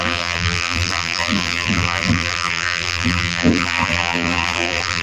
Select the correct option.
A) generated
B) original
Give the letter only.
A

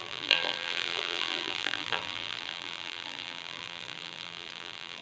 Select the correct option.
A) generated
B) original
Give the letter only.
A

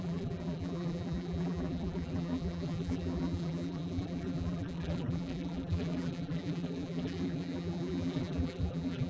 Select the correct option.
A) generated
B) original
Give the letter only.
A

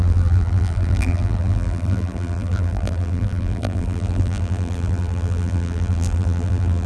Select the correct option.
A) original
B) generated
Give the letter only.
B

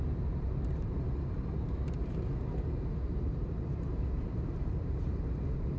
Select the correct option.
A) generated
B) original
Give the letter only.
A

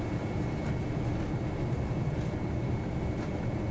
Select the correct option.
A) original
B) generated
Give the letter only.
A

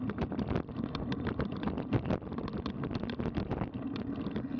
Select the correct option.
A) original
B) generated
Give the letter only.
B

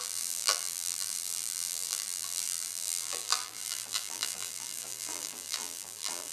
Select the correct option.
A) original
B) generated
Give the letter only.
B